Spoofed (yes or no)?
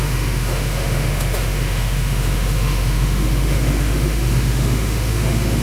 yes